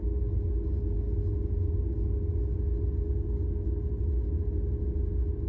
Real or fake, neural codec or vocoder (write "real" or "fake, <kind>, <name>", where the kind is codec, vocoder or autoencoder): real